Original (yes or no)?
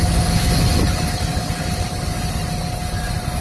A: yes